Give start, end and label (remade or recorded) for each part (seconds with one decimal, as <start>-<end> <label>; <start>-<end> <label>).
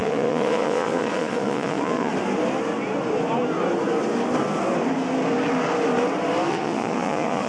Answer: 0.0-2.1 remade; 2.1-6.5 recorded; 6.5-7.5 remade